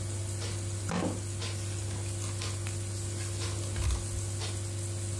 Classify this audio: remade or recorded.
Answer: recorded